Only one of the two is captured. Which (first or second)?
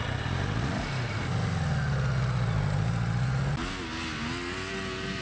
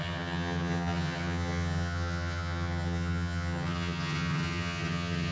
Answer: first